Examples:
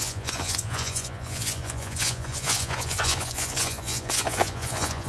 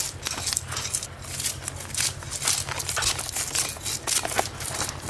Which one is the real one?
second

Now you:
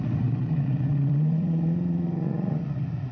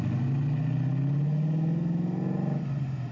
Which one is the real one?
second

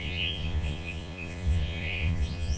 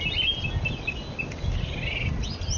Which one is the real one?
second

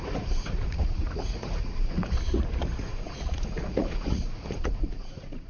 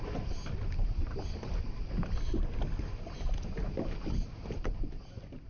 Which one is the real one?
second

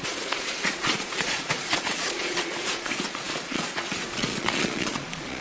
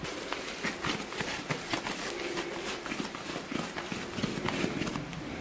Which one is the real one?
second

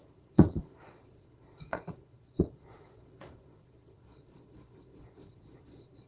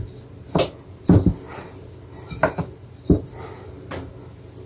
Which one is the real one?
second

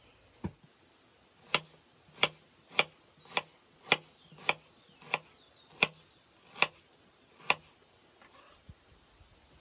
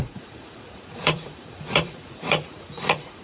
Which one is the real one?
first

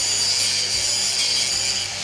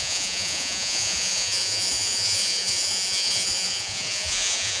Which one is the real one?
first